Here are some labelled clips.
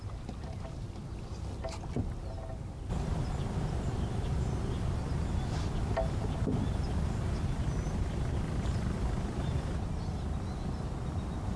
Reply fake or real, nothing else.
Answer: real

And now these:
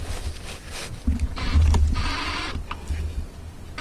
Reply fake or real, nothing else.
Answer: real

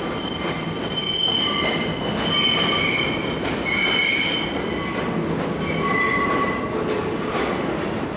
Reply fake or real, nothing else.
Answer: real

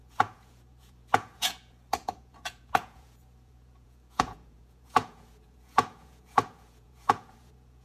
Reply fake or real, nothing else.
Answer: fake